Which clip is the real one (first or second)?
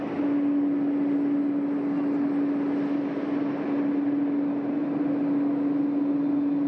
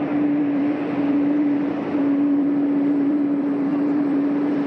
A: first